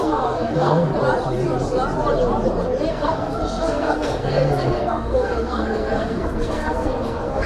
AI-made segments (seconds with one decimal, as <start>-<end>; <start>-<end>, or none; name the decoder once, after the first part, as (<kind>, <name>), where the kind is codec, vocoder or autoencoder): 0.0-0.9 (codec, SNAC); 2.9-7.5